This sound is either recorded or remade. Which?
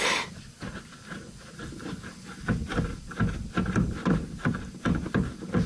recorded